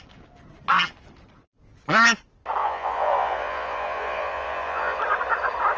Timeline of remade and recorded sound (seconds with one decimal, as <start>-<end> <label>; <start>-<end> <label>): 0.0-2.6 recorded; 2.6-5.0 remade; 5.0-5.8 recorded